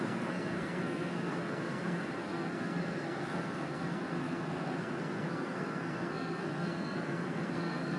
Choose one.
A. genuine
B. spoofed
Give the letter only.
B